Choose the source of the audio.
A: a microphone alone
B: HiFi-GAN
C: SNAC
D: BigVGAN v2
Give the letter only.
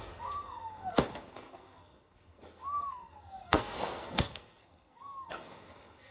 C